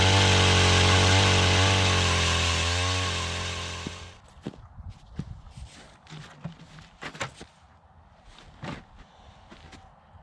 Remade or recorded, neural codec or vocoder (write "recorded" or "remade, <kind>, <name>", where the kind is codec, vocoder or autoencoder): recorded